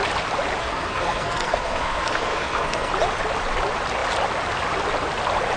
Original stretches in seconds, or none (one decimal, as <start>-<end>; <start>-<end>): 0.0-0.6; 2.9-5.6